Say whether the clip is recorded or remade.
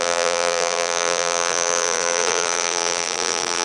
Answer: remade